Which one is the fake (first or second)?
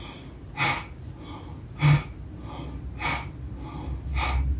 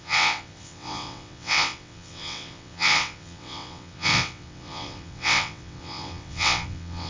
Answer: second